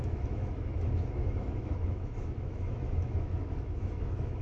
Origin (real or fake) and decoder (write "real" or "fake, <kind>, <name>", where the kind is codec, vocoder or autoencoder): fake, autoencoder, DAC-VAE